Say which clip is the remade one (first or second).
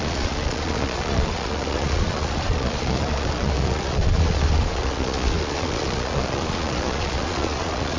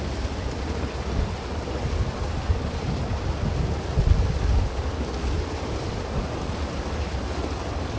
first